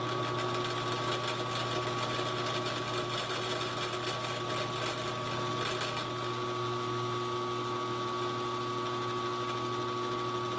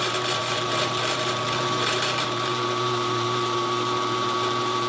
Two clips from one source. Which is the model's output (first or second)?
second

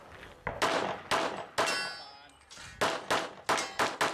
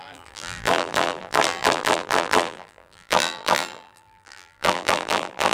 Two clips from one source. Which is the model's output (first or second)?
second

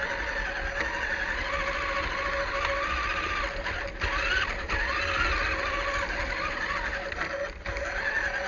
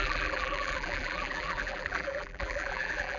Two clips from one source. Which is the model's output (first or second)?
second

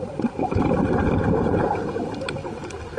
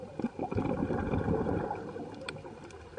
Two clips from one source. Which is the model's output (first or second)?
first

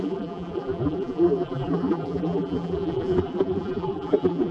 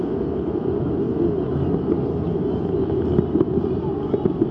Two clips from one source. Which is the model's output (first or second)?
first